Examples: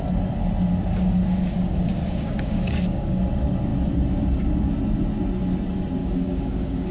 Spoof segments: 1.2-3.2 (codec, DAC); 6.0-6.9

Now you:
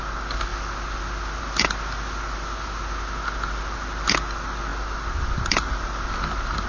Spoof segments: none

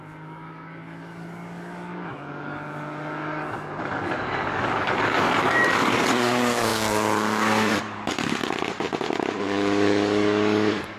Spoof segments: 0.0-8.4 (codec, DAC); 9.4-11.0